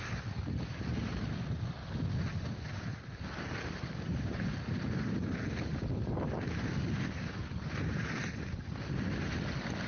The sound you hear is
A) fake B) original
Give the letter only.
B